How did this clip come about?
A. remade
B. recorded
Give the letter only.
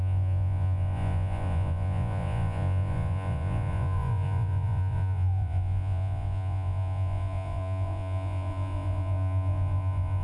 A